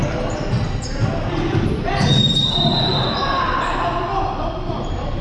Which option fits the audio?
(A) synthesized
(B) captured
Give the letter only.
B